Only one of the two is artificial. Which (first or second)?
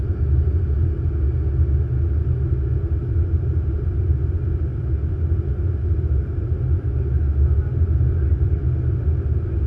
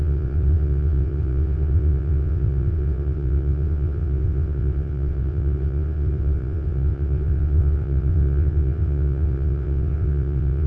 second